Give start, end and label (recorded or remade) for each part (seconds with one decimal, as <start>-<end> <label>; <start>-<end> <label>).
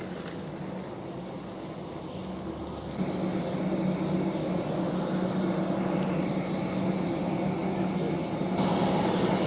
0.0-9.5 recorded